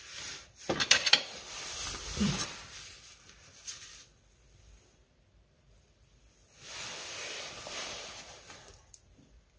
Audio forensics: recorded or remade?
remade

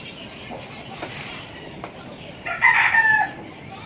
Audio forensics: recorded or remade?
recorded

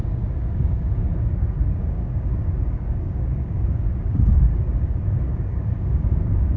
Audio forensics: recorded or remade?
remade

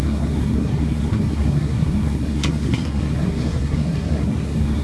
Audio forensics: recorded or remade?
remade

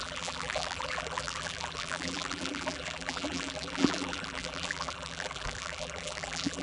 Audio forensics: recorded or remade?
remade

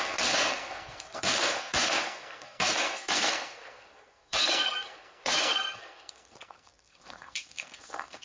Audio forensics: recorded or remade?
remade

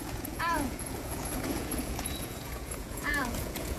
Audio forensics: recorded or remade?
remade